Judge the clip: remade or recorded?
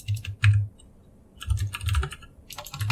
recorded